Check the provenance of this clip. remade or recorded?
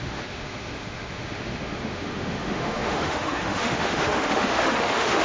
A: remade